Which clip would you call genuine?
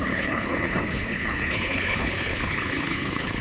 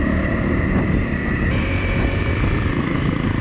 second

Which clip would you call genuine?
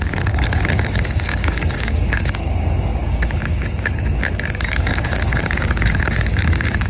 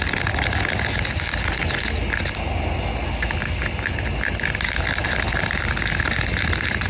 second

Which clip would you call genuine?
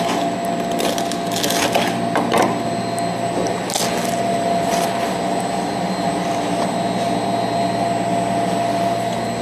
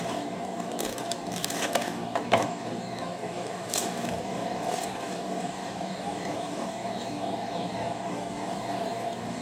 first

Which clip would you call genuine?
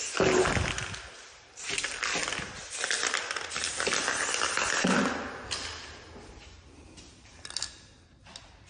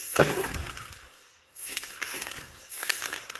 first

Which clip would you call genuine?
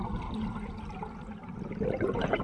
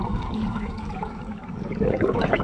first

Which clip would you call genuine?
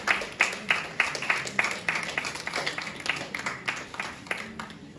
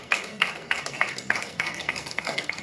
first